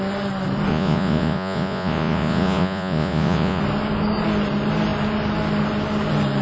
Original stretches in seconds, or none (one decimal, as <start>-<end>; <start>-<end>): 0.0-0.7; 3.6-6.4